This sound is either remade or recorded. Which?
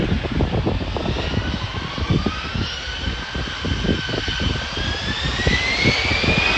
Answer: recorded